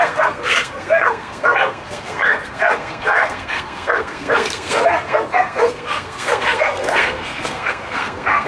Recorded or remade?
remade